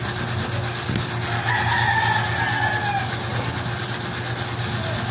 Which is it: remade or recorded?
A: recorded